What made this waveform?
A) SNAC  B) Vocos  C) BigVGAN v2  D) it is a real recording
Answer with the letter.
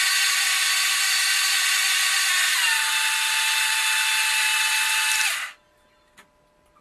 D